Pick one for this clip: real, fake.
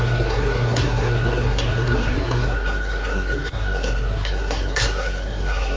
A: fake